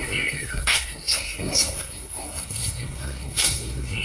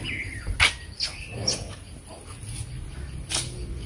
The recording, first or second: second